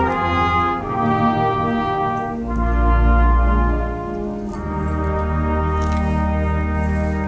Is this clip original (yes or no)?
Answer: yes